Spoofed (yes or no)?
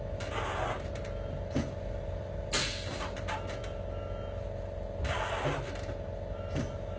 no